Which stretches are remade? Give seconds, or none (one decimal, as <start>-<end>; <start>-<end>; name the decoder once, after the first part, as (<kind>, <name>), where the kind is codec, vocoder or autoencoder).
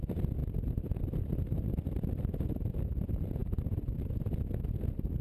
0.4-2.7 (vocoder, BigVGAN v2); 3.4-4.8